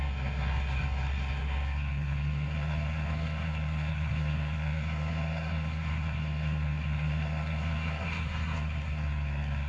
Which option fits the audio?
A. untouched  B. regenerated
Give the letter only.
B